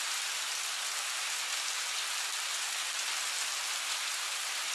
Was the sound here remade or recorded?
recorded